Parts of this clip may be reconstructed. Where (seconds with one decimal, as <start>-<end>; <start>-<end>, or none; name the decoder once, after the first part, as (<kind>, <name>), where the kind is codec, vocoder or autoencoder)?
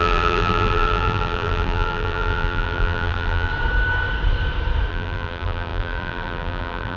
0.0-3.5 (vocoder, BigVGAN v2); 4.9-7.0